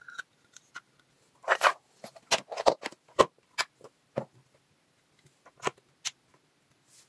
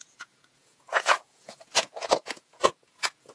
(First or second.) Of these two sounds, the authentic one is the first